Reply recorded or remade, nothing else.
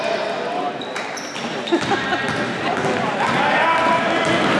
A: recorded